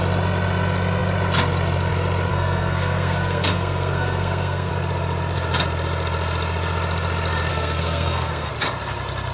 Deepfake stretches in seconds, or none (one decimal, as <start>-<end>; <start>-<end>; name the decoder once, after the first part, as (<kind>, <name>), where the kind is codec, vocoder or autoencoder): 2.3-4.7 (codec, SNAC); 7.5-8.5